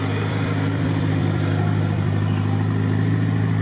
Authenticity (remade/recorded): remade